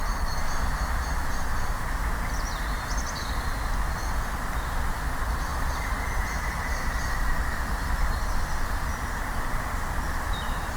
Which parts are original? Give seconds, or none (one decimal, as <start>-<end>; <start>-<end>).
0.0-5.5; 7.4-10.8